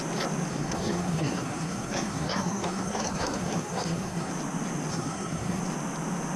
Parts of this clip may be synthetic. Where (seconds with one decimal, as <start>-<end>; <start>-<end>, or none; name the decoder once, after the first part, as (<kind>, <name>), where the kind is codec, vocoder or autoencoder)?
0.5-4.3 (codec, SNAC); 4.9-5.6